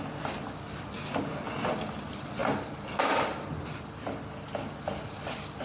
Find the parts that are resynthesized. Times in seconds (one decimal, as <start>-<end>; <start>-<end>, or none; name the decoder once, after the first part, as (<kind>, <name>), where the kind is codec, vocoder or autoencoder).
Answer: none